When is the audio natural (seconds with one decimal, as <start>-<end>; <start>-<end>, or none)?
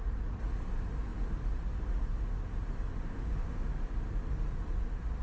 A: 0.0-3.1; 3.7-5.2